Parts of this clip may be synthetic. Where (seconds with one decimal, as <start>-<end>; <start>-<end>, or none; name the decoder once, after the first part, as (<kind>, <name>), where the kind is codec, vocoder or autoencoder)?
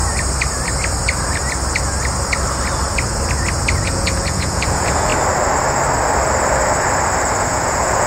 3.8-5.1 (vocoder, Vocos); 7.4-8.1